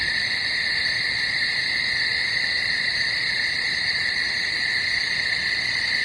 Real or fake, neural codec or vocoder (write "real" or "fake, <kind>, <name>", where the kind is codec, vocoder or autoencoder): real